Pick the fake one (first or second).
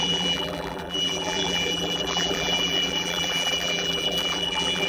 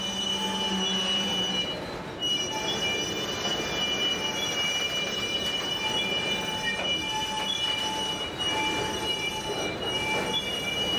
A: first